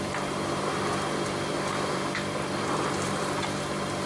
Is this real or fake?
fake